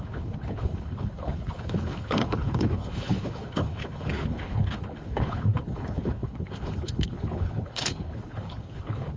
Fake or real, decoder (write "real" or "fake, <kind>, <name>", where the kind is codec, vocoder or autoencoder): fake, codec, HILCodec